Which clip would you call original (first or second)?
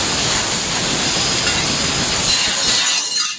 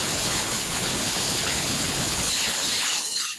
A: first